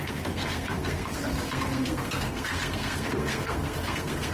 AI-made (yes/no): yes